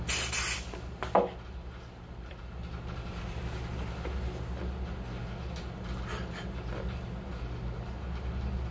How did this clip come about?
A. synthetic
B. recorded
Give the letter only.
B